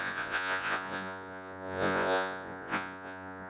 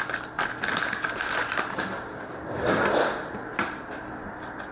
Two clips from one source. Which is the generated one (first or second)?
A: first